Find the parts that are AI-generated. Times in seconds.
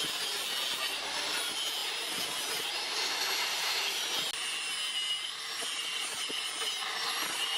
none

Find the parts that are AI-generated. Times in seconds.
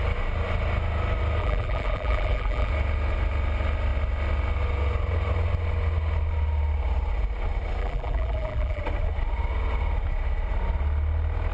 1.4-2.7; 7.8-8.8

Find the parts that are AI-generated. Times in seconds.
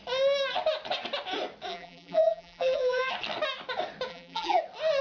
1.7-3.1; 4.1-4.6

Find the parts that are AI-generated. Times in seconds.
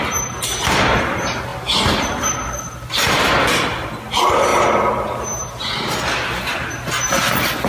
4.5-6.0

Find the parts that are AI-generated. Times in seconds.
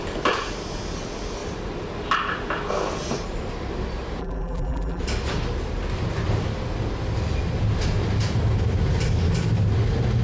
4.2-5.0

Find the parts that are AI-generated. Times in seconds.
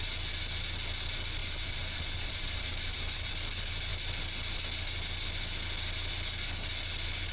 1.4-3.3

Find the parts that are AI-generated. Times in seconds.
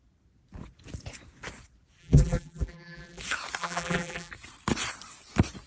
2.0-3.2; 3.6-4.3